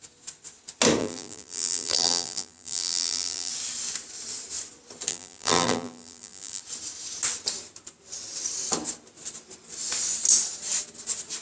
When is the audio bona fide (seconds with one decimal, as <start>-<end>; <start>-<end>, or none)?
0.0-1.0; 3.5-5.1; 6.6-11.4